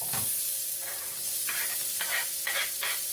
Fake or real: fake